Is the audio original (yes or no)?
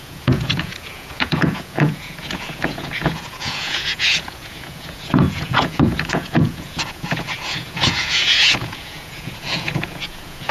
no